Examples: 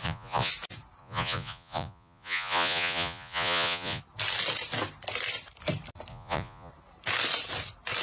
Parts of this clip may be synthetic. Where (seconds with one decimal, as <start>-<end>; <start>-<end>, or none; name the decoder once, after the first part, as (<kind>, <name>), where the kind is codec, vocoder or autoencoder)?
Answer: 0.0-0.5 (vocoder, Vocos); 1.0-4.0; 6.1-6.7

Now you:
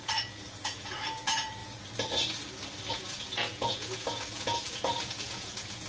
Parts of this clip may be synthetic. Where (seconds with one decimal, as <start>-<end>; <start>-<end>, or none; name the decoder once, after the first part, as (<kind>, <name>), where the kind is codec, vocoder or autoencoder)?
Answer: 0.0-1.6 (vocoder, Vocos); 2.9-5.9

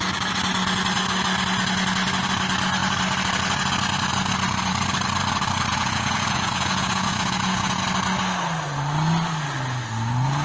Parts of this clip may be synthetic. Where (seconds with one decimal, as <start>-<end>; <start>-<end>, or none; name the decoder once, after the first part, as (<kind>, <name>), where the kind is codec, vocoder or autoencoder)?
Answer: 5.7-7.8 (vocoder, Vocos)